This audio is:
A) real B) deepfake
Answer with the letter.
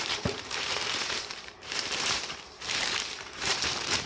B